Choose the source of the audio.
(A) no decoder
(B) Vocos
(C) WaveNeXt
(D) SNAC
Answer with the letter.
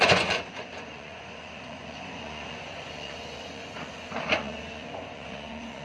B